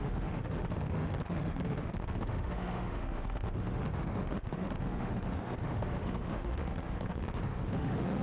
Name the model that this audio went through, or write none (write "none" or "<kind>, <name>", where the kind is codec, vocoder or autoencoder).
autoencoder, DAC-VAE